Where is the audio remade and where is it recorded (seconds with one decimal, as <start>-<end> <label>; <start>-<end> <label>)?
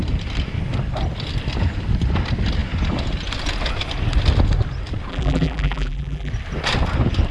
0.0-5.1 recorded; 5.1-6.3 remade; 6.3-7.3 recorded